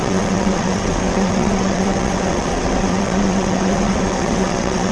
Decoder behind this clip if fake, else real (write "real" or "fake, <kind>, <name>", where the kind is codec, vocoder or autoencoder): fake, vocoder, WaveNeXt